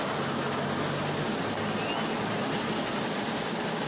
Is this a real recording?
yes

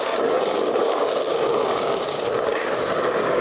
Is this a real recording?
no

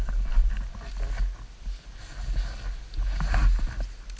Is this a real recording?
yes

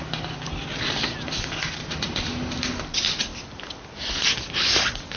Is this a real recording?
yes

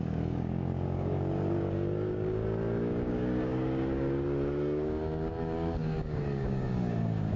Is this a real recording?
no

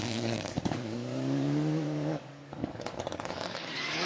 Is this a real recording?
no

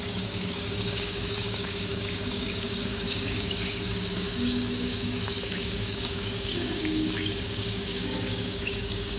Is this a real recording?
no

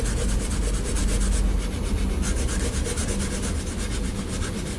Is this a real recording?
yes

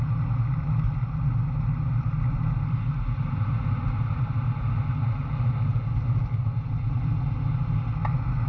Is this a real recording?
yes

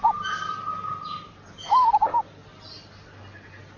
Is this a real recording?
yes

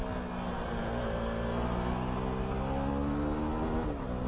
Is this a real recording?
yes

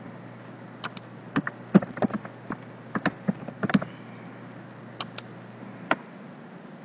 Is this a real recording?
yes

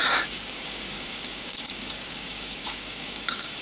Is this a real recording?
no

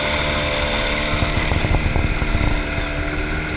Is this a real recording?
yes